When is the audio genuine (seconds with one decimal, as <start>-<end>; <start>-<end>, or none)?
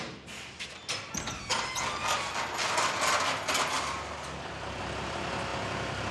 0.0-6.1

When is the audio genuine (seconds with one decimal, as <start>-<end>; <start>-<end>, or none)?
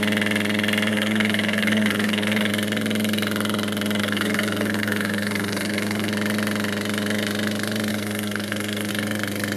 0.0-0.9; 2.5-4.0; 6.1-7.9; 8.9-9.6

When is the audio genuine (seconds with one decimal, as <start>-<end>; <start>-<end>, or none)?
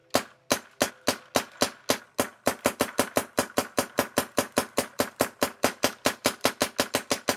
0.0-2.3; 6.5-7.4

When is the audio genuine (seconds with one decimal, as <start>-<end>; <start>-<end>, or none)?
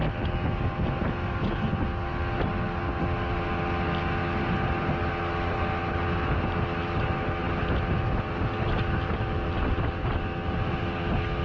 0.0-11.4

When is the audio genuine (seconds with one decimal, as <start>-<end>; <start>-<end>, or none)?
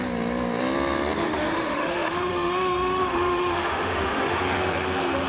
0.0-1.2; 4.4-5.3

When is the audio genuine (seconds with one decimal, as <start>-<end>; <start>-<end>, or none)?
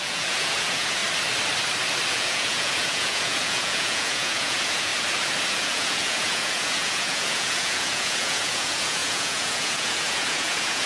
1.0-2.1; 4.9-5.5